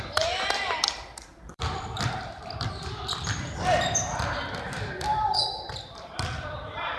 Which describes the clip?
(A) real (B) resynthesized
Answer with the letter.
B